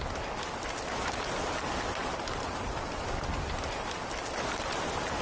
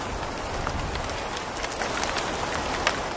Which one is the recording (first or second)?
second